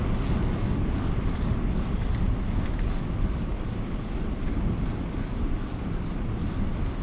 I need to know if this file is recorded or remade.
recorded